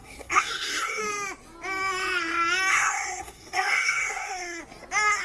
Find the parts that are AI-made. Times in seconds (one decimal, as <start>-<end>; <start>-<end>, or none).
0.0-1.0; 2.7-4.6